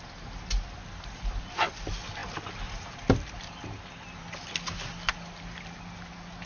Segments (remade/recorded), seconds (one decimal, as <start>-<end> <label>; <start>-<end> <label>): 0.0-6.5 recorded